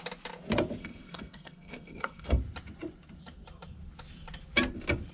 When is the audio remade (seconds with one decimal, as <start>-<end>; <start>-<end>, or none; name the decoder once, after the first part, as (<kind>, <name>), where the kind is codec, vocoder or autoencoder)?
0.8-2.4 (codec, SNAC)